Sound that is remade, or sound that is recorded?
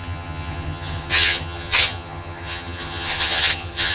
remade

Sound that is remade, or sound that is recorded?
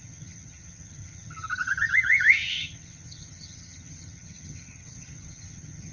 remade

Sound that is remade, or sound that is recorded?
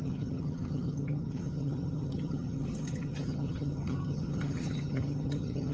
remade